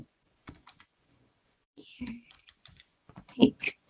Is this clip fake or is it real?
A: fake